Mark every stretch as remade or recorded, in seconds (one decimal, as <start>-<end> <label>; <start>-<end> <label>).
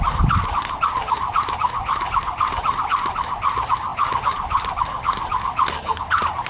0.0-6.5 recorded